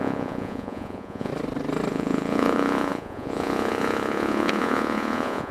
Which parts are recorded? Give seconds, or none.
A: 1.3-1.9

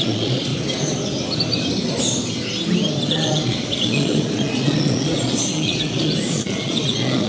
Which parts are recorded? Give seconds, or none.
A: 0.5-3.1

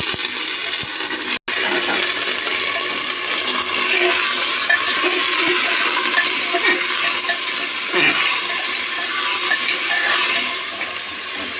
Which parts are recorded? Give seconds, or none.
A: 0.0-11.6

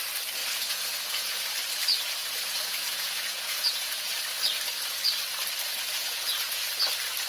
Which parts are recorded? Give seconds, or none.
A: 0.0-0.4; 1.4-2.2; 4.2-6.0; 6.6-7.3

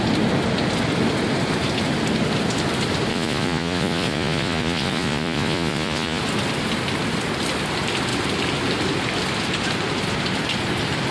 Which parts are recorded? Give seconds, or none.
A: 0.0-3.1; 6.2-11.1

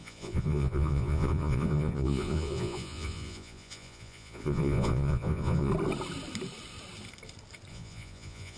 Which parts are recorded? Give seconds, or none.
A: 5.7-7.7

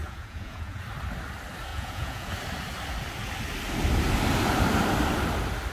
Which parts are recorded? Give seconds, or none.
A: 0.8-1.7; 2.3-5.7

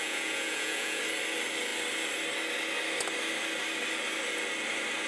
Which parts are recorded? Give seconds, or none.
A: 1.0-5.1